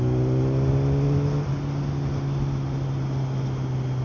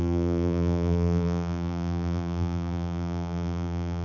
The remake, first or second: second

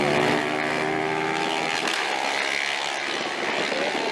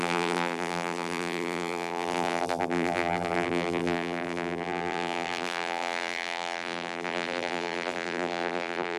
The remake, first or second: second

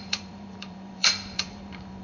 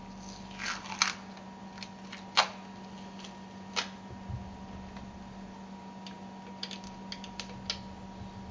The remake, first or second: first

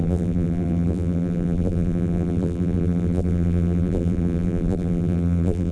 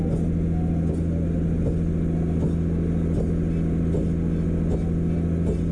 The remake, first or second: first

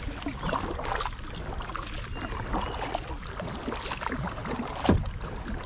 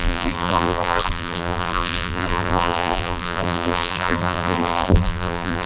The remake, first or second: second